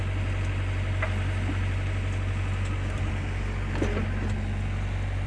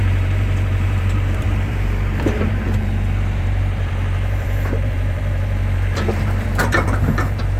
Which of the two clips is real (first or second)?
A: first